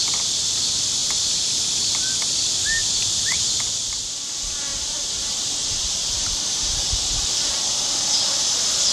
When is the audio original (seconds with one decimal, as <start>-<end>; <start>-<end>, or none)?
0.0-1.0; 1.9-2.8; 3.5-4.7; 7.3-8.9